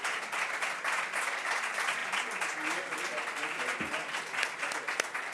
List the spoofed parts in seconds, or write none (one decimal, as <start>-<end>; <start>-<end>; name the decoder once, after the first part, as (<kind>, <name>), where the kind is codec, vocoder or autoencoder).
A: none